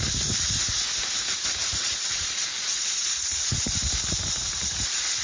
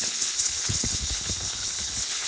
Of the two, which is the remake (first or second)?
second